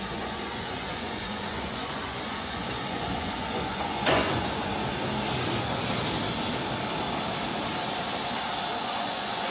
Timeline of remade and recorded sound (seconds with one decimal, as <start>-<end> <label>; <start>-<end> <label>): 0.0-4.7 remade; 4.7-8.8 recorded; 8.8-9.5 remade